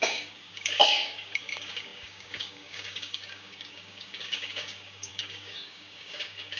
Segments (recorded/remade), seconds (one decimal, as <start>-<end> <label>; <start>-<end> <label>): 0.0-6.6 remade